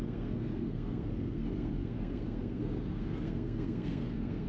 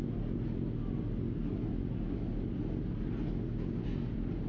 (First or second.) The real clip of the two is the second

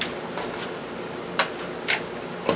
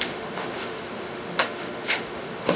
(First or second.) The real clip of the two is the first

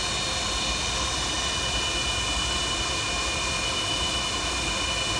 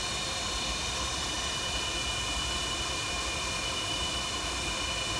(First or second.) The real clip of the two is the first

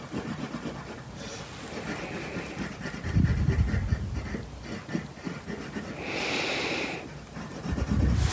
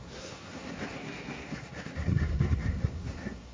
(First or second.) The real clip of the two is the first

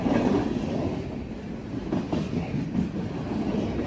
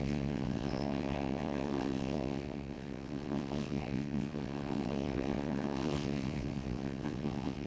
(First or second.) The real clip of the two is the first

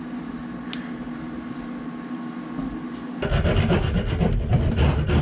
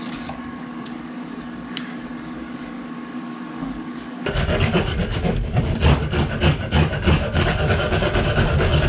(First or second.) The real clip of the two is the first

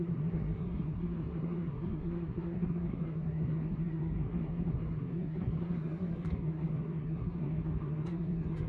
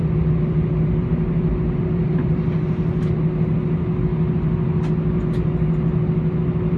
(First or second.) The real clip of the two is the second